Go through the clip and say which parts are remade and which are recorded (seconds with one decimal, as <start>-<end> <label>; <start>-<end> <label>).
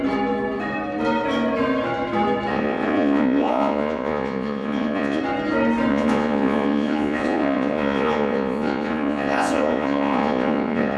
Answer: 0.0-2.5 recorded; 2.5-5.2 remade; 5.2-5.9 recorded; 5.9-11.0 remade